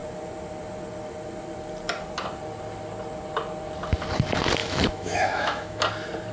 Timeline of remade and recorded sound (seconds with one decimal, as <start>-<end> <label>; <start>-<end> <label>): 0.0-4.6 recorded; 4.6-5.8 remade; 5.8-6.3 recorded